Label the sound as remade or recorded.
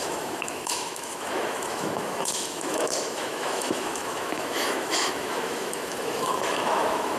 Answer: remade